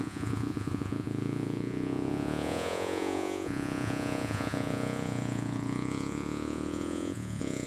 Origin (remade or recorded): remade